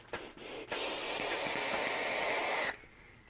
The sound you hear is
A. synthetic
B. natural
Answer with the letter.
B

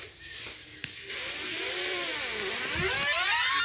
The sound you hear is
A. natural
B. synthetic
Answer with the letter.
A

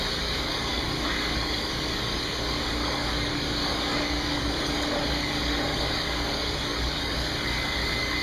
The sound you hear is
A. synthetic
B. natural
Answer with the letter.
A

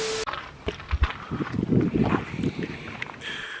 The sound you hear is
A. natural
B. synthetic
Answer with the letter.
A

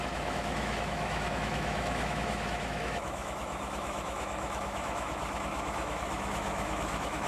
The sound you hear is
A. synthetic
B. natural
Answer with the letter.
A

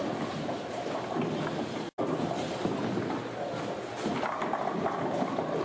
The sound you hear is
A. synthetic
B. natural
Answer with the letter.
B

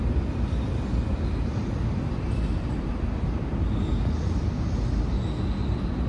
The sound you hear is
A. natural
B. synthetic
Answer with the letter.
A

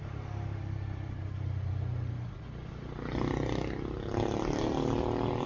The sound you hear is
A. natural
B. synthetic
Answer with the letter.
A